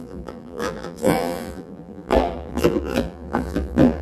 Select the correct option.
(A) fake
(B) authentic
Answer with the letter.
A